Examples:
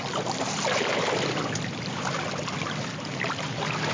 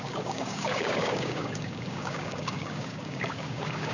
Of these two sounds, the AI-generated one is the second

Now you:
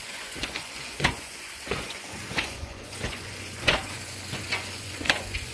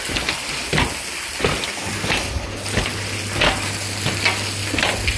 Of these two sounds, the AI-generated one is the first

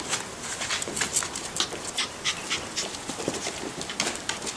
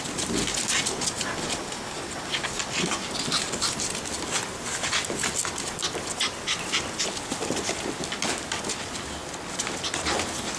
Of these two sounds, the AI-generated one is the first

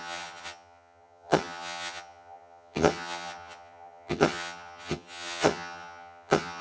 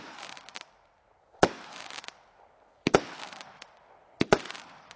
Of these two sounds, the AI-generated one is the first